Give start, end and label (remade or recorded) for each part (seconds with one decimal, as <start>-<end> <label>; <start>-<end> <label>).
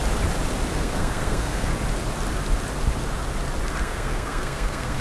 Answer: 0.0-0.7 recorded; 0.7-1.7 remade; 1.7-3.8 recorded; 3.8-5.0 remade